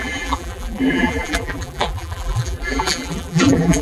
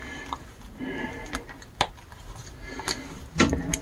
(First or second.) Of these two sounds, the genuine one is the second